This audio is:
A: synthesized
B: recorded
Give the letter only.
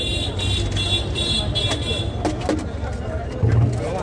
B